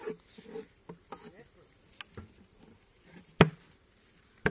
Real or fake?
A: real